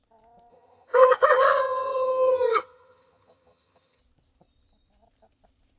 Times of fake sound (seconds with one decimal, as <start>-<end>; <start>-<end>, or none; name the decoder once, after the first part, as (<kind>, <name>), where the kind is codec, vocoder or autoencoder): 0.5-4.0 (vocoder, HiFi-GAN)